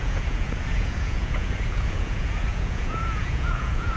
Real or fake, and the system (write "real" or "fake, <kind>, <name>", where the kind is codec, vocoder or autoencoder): fake, vocoder, Vocos